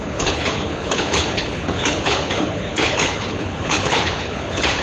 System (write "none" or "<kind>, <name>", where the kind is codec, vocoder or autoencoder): codec, HILCodec